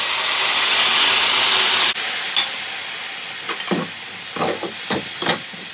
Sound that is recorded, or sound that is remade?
recorded